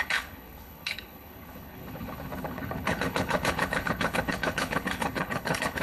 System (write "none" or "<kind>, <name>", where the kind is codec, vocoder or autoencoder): codec, HILCodec